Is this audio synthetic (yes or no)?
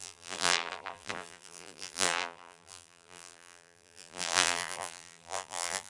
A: yes